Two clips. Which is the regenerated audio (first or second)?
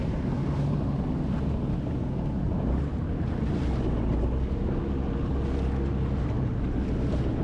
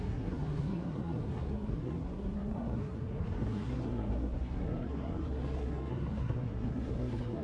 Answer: second